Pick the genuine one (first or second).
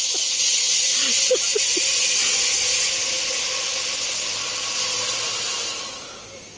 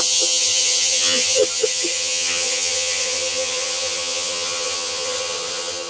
first